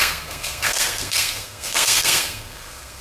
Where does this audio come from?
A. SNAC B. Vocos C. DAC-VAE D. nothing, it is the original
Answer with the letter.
A